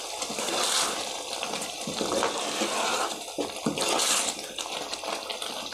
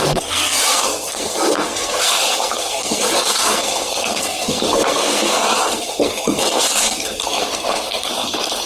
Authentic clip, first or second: first